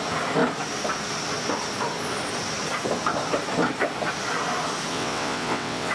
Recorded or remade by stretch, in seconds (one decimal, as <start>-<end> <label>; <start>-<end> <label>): 0.0-4.9 recorded; 4.9-5.9 remade